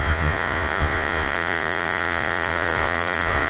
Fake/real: fake